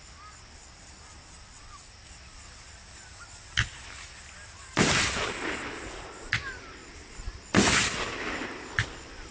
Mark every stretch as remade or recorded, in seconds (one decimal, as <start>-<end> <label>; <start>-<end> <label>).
0.0-6.8 recorded; 6.8-9.3 remade